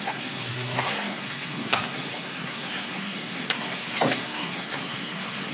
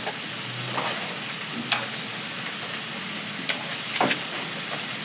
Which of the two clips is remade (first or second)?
first